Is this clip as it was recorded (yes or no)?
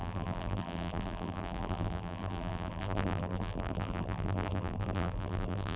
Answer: no